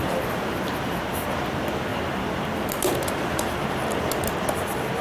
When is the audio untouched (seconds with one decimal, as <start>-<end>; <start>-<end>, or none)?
0.0-5.0

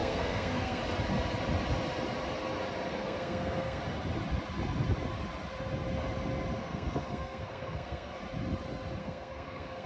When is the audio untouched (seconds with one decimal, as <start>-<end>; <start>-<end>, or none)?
0.8-2.9; 3.8-6.6; 8.2-9.0

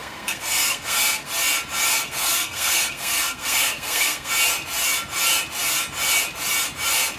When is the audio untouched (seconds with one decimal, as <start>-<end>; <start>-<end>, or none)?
1.3-2.0; 4.3-7.2

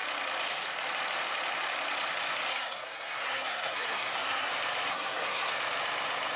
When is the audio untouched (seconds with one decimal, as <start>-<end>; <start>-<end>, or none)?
0.0-2.5; 4.5-4.9; 5.5-6.4

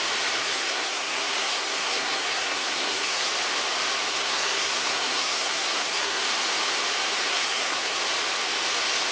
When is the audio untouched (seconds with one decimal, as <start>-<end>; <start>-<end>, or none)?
0.0-0.4; 3.3-4.1; 6.2-7.2; 8.0-9.1

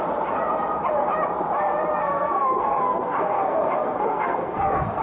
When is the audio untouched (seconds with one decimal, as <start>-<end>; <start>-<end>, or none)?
0.0-2.0